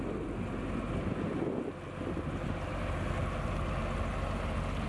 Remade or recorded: recorded